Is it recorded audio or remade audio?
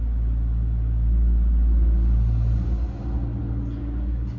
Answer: recorded